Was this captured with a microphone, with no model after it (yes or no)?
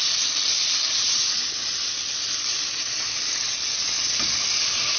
yes